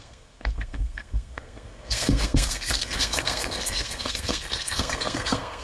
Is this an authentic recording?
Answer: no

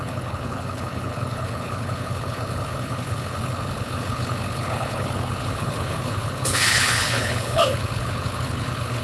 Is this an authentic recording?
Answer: no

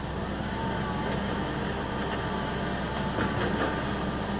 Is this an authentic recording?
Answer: yes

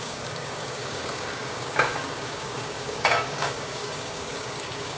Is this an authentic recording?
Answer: no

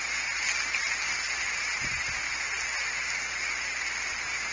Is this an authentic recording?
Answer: yes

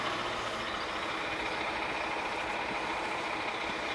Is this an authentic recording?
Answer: yes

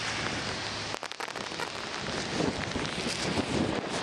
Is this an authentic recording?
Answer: yes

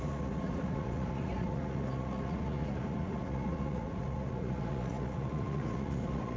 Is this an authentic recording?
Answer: no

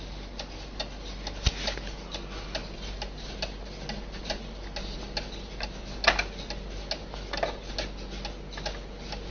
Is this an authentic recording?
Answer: yes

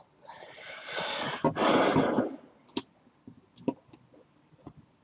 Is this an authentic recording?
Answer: yes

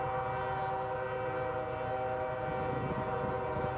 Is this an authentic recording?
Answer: yes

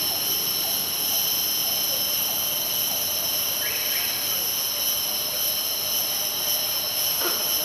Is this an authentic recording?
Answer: yes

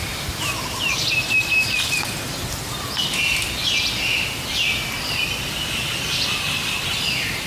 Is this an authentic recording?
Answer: yes